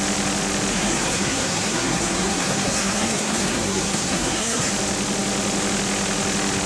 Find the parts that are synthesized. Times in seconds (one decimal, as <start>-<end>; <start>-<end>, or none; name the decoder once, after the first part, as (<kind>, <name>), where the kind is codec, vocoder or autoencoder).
0.7-4.7 (codec, SNAC)